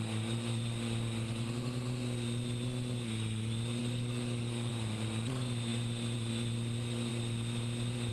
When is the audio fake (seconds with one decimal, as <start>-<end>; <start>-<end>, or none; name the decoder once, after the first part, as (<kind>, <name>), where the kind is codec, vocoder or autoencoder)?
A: 3.8-4.7 (codec, DAC)